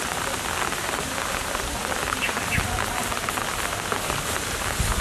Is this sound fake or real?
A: real